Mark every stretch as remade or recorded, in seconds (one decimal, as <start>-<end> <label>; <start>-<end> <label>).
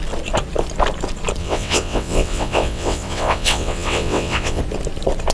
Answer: 0.0-1.4 recorded; 1.4-4.6 remade; 4.6-5.3 recorded